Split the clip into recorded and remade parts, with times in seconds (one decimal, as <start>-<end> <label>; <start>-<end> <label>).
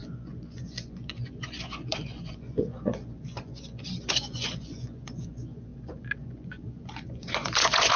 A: 0.0-8.0 remade